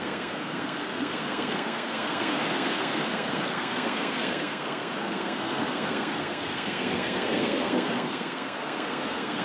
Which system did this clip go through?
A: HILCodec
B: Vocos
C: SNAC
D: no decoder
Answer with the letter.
C